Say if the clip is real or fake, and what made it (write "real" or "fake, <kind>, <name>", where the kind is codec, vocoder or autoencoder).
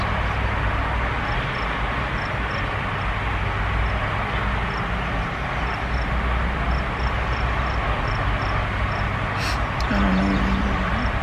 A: real